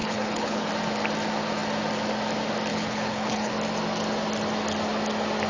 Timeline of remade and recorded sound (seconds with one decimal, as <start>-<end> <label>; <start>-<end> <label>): 0.0-0.7 remade; 0.7-2.7 recorded; 2.7-3.5 remade; 3.5-5.5 recorded